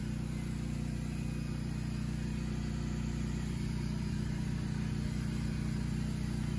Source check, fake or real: real